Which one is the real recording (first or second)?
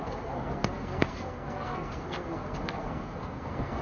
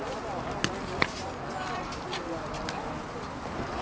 second